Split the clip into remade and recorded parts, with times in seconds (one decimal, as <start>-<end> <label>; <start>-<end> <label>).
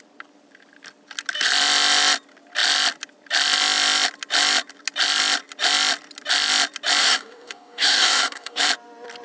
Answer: 0.0-7.0 recorded; 7.0-8.6 remade; 8.6-9.2 recorded